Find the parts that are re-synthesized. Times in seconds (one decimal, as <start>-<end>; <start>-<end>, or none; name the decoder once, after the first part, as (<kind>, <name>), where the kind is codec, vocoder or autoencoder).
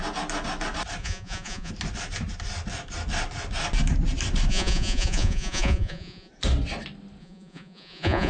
1.0-1.7 (vocoder, Vocos); 4.5-6.3; 7.2-8.3